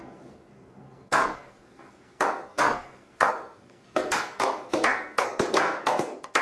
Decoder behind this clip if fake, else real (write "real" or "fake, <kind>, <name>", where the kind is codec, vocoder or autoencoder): fake, codec, SNAC